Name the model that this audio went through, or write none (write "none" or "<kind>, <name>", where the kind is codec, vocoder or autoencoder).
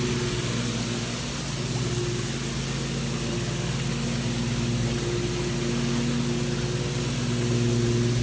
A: none